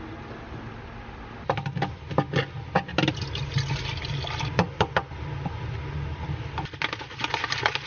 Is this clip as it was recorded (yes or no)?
yes